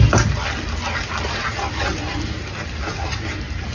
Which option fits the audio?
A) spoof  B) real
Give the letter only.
B